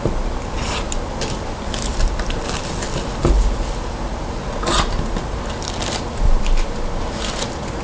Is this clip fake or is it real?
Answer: real